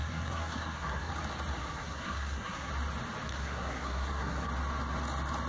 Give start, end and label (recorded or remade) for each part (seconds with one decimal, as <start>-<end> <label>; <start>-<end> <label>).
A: 0.0-1.1 remade; 1.1-1.6 recorded; 1.6-2.7 remade; 2.7-3.3 recorded; 3.3-4.5 remade; 4.5-5.5 recorded